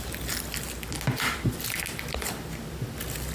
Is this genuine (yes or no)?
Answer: yes